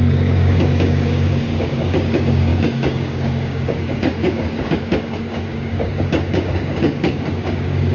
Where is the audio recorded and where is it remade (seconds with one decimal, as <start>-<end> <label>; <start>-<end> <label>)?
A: 0.0-7.9 remade